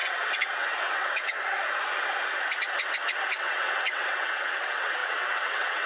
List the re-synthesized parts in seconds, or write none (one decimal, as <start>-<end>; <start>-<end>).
0.0-1.4; 3.4-5.9

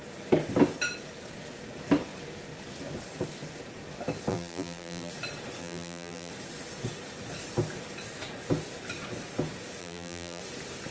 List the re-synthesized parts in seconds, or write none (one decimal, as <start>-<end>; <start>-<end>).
4.3-5.1; 5.6-6.3; 9.8-10.4

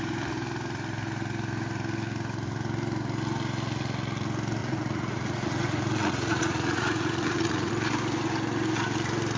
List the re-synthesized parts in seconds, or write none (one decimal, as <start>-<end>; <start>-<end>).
4.6-7.7

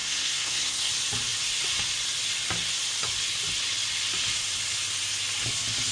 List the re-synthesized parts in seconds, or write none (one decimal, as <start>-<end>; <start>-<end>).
0.0-0.9